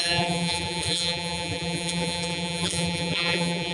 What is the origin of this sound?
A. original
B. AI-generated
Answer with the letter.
B